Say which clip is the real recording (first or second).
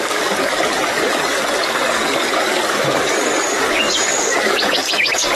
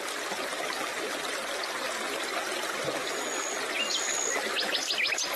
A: second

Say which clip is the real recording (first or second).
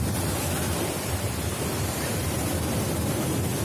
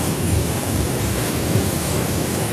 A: first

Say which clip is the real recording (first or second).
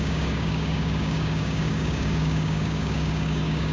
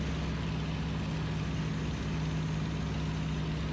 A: second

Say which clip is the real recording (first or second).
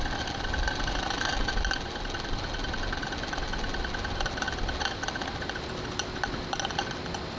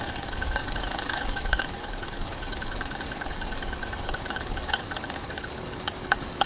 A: first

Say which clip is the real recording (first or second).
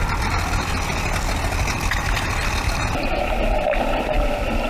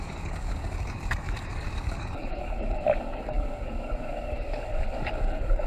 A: first